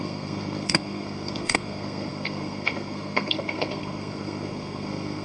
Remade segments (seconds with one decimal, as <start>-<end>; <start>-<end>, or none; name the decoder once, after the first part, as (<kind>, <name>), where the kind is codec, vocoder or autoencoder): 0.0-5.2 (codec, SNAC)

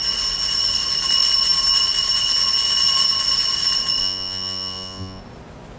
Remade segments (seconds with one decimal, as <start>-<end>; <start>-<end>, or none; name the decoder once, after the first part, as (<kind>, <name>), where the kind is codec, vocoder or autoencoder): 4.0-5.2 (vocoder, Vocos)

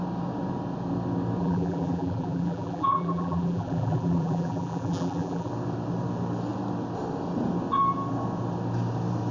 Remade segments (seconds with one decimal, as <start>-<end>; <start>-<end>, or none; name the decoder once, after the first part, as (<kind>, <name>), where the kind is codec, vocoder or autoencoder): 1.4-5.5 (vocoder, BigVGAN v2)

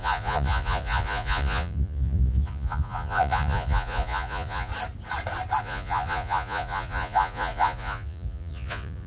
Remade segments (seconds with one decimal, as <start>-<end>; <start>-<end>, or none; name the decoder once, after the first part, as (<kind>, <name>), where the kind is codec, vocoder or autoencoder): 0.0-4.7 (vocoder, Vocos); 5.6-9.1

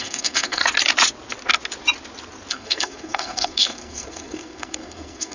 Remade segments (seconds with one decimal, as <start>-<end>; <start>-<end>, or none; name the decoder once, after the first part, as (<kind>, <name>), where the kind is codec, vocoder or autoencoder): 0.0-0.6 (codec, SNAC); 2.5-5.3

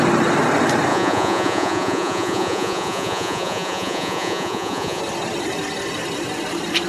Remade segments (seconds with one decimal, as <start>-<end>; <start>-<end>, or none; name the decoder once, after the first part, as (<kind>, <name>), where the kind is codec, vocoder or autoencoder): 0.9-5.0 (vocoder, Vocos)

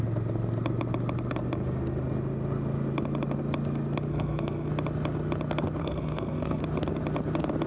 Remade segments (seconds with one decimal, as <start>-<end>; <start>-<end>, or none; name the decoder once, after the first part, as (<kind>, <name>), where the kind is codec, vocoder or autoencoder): 4.1-4.7 (codec, SNAC); 5.8-6.6